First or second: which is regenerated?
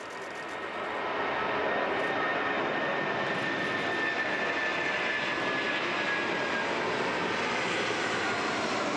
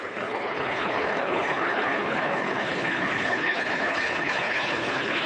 second